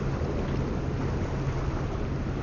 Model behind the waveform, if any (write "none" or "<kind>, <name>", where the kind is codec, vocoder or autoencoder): none